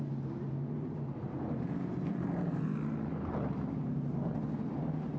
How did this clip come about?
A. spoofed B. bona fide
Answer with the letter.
B